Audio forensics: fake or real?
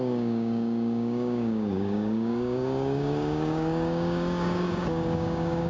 fake